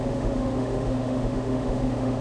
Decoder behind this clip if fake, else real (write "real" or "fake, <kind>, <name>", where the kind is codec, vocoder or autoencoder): fake, autoencoder, DAC-VAE